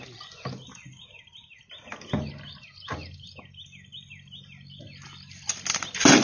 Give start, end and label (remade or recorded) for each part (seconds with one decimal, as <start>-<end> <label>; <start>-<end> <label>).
0.0-6.2 recorded